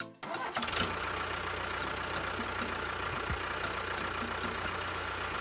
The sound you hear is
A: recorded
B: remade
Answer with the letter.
A